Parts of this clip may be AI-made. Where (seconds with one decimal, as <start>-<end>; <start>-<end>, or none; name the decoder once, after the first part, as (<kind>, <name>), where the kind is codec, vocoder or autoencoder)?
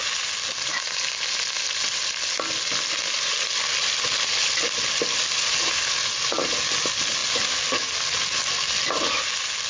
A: none